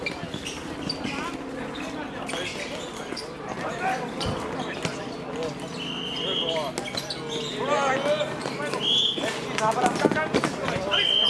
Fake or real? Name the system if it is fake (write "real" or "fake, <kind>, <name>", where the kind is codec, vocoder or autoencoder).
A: real